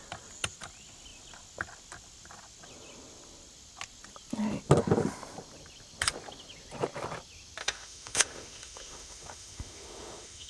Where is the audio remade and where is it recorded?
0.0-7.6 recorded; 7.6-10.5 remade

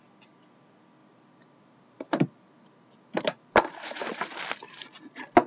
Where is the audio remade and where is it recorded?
0.0-1.0 recorded; 1.0-4.3 remade; 4.3-5.5 recorded

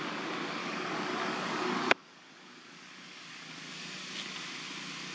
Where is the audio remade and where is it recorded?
0.0-0.6 recorded; 0.6-3.7 remade; 3.7-5.1 recorded